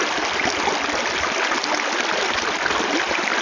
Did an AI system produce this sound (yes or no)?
no